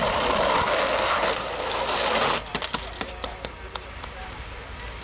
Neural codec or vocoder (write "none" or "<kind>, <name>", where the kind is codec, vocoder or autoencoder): none